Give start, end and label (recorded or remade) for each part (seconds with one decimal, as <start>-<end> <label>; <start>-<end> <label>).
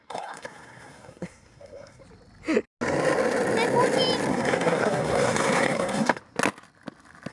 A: 0.0-2.0 remade; 2.0-4.3 recorded; 4.3-6.2 remade; 6.2-7.3 recorded